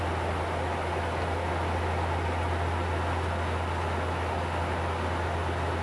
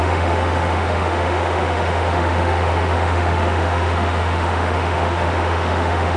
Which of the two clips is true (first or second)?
first